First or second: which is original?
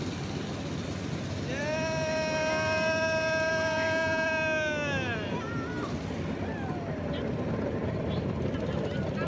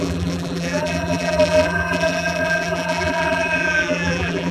first